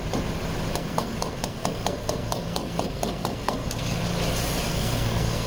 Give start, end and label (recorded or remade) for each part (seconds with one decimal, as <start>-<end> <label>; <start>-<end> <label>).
0.0-0.7 recorded; 0.7-4.0 remade; 4.0-4.7 recorded; 4.7-5.5 remade